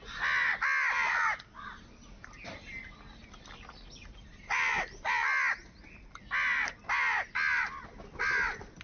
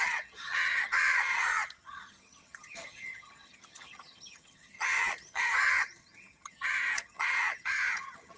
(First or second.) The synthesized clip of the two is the second